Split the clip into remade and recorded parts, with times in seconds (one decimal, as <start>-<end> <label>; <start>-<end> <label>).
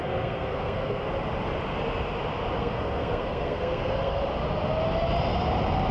0.0-1.0 remade; 1.0-2.6 recorded; 2.6-4.2 remade; 4.2-5.9 recorded